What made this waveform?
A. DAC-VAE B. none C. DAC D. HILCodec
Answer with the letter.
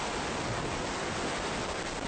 B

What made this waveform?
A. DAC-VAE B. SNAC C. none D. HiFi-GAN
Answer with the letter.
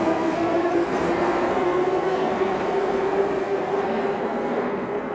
B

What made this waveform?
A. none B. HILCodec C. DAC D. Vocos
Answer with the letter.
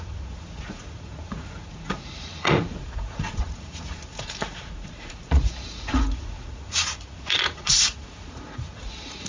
D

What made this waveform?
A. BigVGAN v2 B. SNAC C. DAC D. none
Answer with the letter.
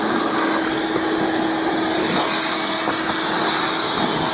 D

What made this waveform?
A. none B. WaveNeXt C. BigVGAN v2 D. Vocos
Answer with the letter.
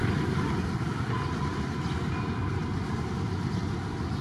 A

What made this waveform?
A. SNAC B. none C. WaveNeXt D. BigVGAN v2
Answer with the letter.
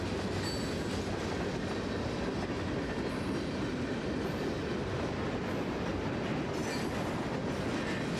B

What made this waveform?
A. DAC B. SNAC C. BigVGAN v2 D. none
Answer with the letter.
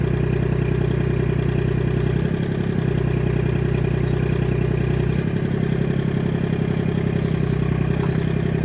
D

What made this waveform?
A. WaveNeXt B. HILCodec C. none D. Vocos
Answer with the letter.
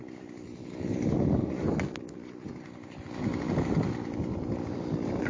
C